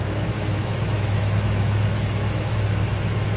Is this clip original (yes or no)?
no